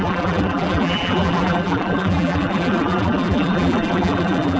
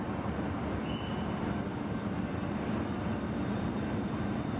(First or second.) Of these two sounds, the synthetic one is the first